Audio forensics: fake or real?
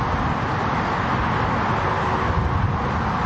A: real